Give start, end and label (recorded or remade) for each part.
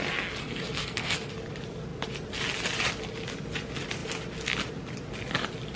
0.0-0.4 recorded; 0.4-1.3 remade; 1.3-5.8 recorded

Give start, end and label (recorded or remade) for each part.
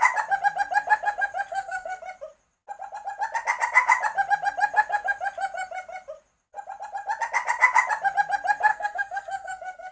0.0-1.5 recorded; 1.5-2.0 remade; 2.0-8.7 recorded; 8.7-9.9 remade